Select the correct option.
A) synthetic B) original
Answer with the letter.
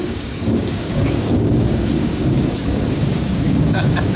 A